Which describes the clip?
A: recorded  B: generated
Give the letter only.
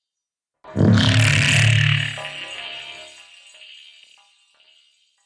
A